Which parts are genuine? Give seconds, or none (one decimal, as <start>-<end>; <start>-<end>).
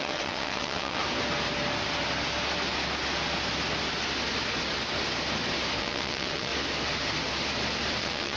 1.0-5.8; 6.5-8.0